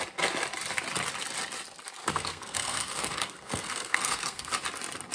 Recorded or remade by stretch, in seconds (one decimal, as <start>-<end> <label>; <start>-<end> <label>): 0.0-2.0 recorded; 2.0-4.5 remade; 4.5-5.1 recorded